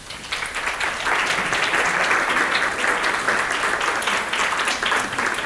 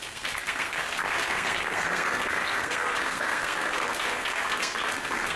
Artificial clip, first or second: second